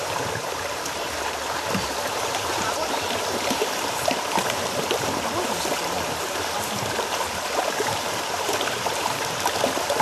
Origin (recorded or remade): remade